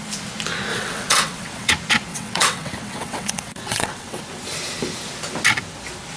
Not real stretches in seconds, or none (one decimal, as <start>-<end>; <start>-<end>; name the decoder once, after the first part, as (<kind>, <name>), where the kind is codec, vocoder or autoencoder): 0.7-1.7 (vocoder, WaveNeXt); 2.1-4.2